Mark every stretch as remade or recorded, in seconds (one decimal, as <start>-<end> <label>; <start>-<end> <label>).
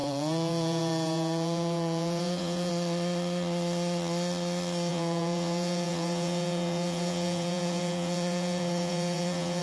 0.0-2.7 remade; 2.7-4.9 recorded; 4.9-9.6 remade